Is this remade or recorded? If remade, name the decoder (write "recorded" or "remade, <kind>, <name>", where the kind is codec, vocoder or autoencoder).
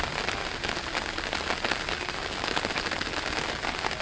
recorded